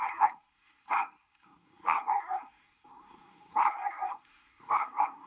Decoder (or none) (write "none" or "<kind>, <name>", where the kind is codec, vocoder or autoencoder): codec, SNAC